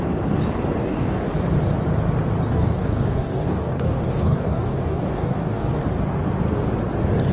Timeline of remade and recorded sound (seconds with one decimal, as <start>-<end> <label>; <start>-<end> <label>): 0.0-0.8 recorded; 0.8-1.3 remade; 1.3-2.5 recorded; 2.5-5.7 remade; 5.7-7.3 recorded